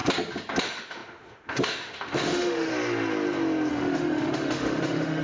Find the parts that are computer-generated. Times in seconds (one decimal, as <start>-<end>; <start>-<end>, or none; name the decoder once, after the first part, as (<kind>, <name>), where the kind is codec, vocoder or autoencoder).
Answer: 0.6-2.7 (autoencoder, DAC-VAE); 3.7-5.2